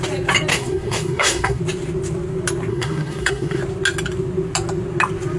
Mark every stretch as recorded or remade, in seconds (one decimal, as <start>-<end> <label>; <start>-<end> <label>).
0.0-0.5 recorded; 0.5-1.6 remade; 1.6-2.7 recorded; 2.7-3.6 remade; 3.6-5.4 recorded